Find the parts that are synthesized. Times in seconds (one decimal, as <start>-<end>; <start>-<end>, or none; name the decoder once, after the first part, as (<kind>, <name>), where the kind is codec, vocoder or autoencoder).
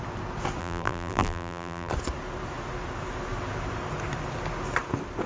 0.6-1.9 (vocoder, BigVGAN v2)